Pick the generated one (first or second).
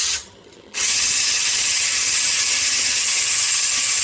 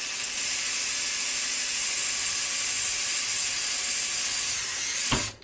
first